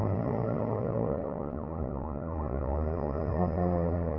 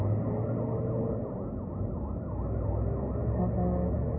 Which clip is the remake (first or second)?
first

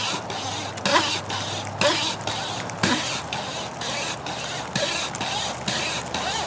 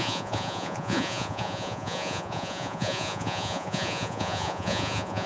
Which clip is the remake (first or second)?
second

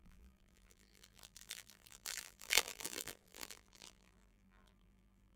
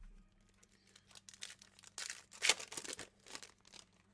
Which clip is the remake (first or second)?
first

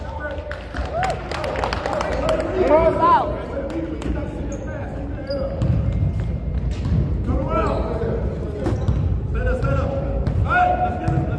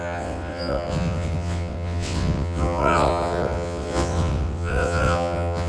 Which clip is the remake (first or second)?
second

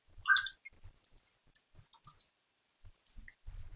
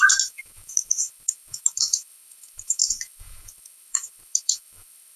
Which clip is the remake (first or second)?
second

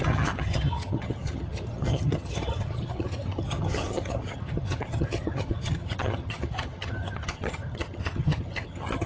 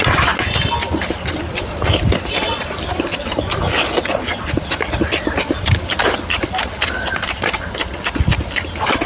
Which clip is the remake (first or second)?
first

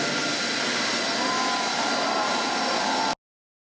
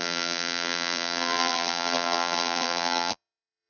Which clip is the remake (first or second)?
second